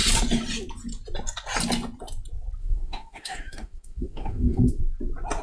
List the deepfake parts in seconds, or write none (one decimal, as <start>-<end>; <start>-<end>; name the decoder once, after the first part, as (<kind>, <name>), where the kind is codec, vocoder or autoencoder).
2.6-4.8 (autoencoder, DAC-VAE)

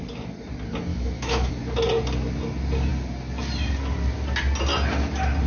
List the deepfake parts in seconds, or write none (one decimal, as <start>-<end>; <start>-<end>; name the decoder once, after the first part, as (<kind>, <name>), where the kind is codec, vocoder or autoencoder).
0.9-1.5 (autoencoder, DAC-VAE)